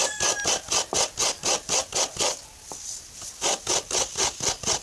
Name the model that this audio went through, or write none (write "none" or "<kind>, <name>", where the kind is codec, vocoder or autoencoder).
none